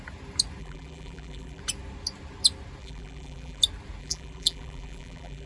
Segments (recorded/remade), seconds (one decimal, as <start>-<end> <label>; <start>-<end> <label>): 0.0-0.6 recorded; 0.6-1.6 remade; 1.6-2.8 recorded; 2.8-3.6 remade; 3.6-4.0 recorded; 4.0-5.5 remade